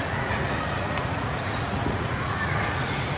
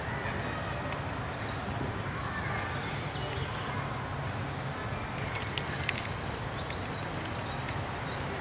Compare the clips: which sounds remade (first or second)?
first